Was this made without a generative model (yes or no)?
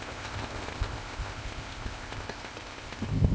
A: no